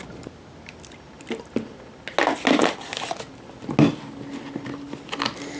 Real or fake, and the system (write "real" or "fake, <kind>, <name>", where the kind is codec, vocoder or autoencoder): real